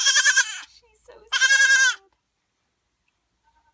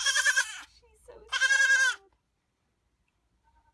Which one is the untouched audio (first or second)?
first